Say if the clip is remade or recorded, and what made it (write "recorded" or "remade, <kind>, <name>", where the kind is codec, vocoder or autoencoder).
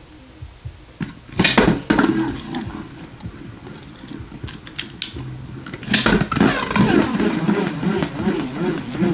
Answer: recorded